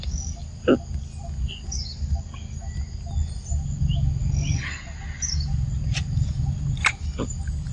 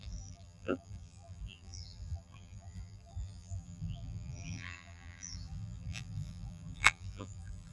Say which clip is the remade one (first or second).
second